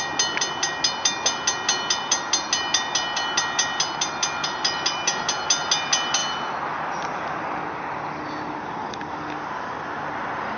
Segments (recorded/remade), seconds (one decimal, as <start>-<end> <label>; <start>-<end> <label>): 0.0-10.6 recorded